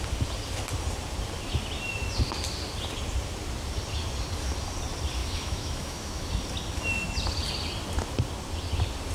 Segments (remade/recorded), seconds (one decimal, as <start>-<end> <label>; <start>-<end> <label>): 0.0-5.2 recorded; 5.2-6.3 remade; 6.3-9.1 recorded